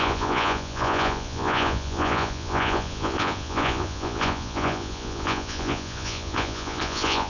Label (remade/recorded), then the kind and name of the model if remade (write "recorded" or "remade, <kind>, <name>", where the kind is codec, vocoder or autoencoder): remade, vocoder, Vocos